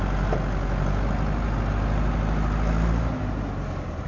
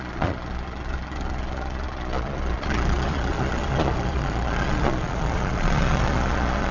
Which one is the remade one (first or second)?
second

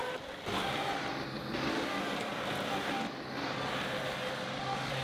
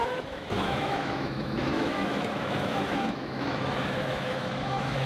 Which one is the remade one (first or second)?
second